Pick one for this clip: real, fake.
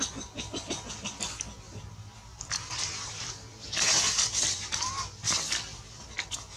real